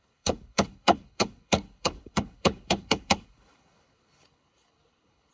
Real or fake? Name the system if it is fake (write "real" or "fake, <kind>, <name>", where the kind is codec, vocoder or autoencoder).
fake, codec, HILCodec